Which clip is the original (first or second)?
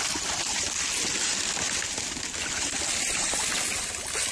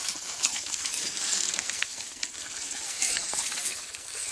first